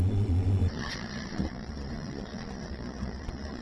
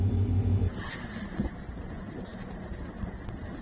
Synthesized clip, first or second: first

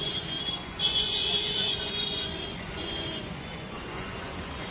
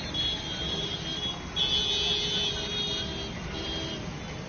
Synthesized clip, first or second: first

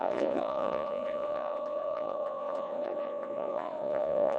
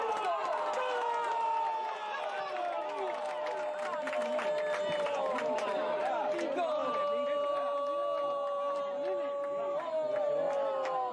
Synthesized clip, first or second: first